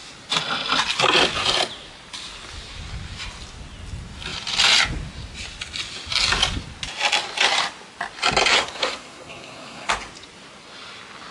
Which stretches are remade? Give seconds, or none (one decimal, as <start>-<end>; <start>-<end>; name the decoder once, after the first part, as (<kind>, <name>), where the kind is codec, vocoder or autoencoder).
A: 8.5-9.9 (codec, SNAC)